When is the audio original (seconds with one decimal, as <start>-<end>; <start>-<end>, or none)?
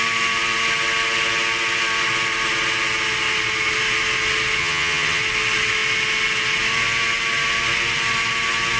0.0-4.6; 5.2-8.8